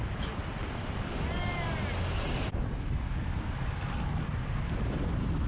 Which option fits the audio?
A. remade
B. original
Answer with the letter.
B